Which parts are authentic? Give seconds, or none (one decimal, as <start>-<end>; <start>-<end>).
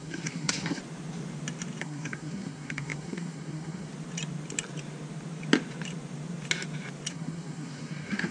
0.8-1.8; 3.9-7.1